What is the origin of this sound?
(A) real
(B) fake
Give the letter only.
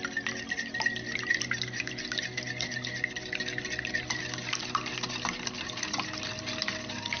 A